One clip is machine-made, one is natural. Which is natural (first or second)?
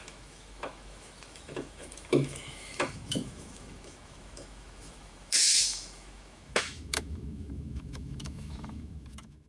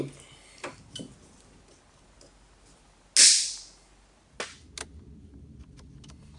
second